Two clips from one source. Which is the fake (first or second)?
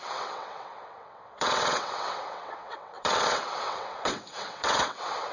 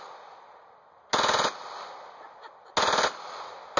first